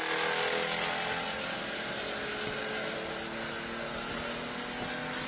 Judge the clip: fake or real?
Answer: real